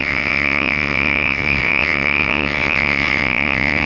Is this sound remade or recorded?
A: remade